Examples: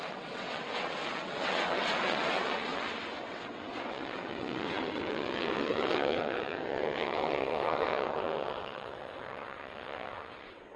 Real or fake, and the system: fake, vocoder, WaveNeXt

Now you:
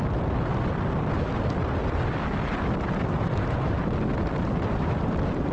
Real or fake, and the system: real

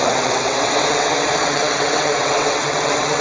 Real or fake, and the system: fake, vocoder, WaveNeXt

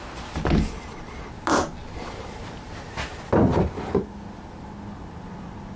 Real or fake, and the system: real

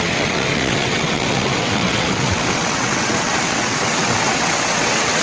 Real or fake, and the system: fake, vocoder, WaveNeXt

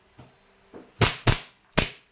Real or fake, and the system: real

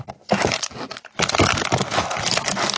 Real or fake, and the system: real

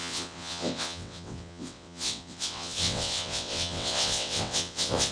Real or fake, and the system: fake, vocoder, WaveNeXt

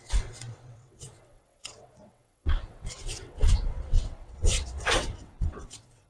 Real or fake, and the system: fake, vocoder, WaveNeXt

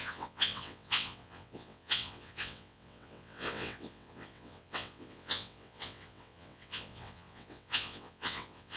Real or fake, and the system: fake, vocoder, WaveNeXt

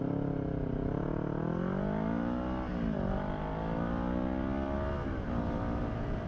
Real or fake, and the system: real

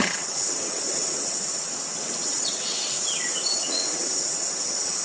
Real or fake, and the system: fake, vocoder, WaveNeXt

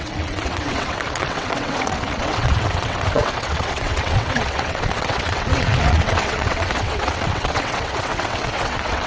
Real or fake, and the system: fake, vocoder, WaveNeXt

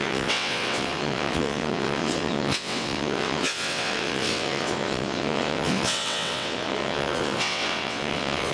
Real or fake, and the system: fake, vocoder, WaveNeXt